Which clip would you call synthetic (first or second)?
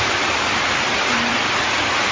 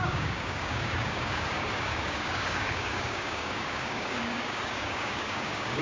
second